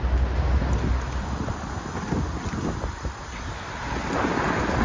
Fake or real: real